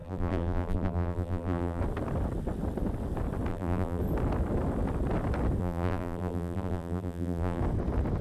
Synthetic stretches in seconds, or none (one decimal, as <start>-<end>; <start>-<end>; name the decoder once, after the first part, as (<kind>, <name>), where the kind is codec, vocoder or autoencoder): 0.0-1.8 (vocoder, BigVGAN v2); 3.5-4.0; 5.6-7.6